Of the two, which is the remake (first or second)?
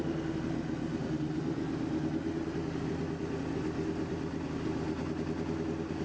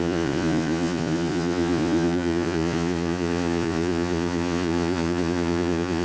second